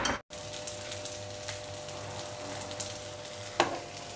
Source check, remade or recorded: recorded